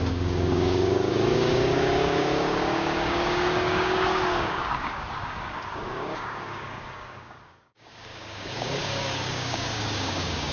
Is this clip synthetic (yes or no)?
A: yes